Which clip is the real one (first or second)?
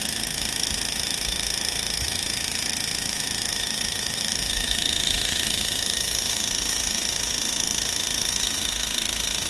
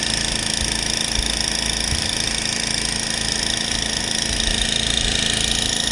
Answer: second